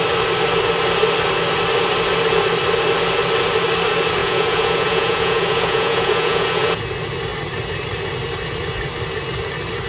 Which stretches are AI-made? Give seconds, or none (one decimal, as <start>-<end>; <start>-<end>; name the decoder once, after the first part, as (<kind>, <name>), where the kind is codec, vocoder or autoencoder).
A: 4.2-6.8 (vocoder, Vocos)